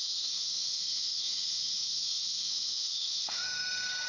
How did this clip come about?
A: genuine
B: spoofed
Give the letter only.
B